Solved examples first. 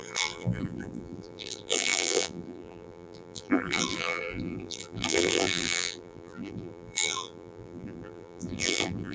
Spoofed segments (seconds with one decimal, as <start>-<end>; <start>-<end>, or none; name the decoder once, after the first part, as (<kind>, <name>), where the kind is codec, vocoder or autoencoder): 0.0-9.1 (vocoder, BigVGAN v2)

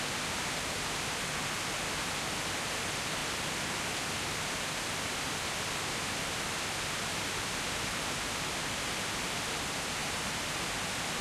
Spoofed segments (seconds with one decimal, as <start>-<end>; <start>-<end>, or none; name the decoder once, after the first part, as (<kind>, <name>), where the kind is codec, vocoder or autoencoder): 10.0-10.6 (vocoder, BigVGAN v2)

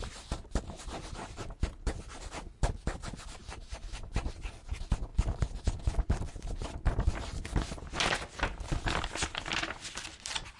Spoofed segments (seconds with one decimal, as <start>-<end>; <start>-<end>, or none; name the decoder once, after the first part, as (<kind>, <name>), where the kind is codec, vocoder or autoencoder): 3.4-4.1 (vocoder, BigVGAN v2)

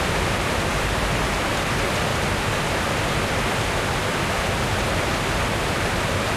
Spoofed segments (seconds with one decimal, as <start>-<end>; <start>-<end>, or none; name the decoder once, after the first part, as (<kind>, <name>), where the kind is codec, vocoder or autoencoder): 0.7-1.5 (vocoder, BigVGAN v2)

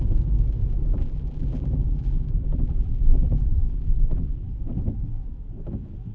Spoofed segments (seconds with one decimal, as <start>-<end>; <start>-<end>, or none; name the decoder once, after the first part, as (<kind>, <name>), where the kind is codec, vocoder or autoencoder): 0.8-4.5 (vocoder, BigVGAN v2)

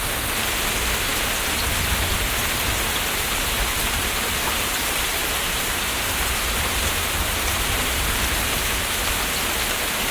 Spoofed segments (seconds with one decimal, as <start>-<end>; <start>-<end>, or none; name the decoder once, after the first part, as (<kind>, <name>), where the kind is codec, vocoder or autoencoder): 3.8-8.0 (vocoder, BigVGAN v2)